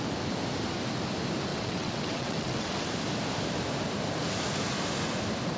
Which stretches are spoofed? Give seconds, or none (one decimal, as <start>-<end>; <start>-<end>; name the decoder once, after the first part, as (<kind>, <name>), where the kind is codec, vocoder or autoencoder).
1.5-2.9 (vocoder, WaveNeXt)